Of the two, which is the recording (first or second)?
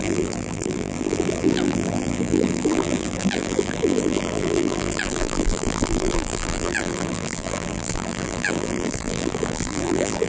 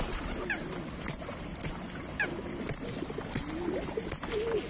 second